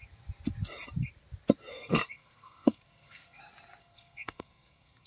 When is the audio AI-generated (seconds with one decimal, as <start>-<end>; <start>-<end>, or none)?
1.7-3.4; 3.8-5.1